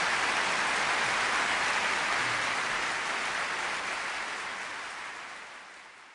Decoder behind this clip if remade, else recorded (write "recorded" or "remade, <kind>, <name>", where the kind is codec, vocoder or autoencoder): recorded